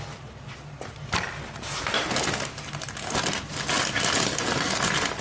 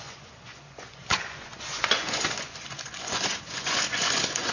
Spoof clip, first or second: second